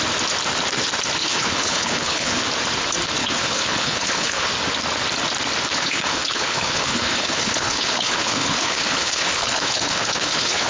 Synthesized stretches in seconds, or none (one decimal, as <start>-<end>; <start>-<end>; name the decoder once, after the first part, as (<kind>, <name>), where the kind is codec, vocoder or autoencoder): 1.2-2.4 (codec, HILCodec); 3.2-4.5; 5.7-10.7